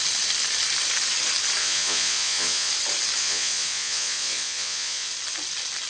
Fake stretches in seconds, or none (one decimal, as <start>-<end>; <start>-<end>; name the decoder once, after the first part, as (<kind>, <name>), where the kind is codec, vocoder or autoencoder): 1.6-2.7 (vocoder, Vocos); 3.2-5.1

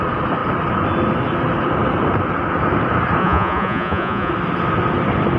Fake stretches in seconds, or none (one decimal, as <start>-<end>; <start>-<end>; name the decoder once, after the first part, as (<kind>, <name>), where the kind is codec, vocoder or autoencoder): 3.2-4.3 (vocoder, Vocos)

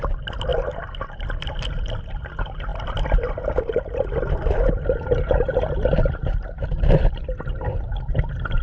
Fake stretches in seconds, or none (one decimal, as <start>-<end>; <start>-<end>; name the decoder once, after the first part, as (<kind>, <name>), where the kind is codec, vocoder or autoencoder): none

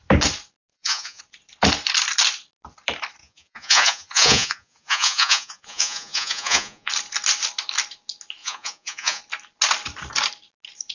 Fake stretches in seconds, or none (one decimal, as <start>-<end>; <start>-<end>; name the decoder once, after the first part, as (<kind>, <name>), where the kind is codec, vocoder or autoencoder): 0.7-1.2 (vocoder, Vocos); 3.2-6.9; 8.4-9.2

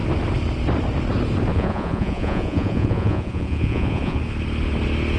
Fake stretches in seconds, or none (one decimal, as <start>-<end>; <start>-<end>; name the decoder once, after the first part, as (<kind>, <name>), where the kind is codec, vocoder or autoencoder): 1.5-4.2 (vocoder, Vocos)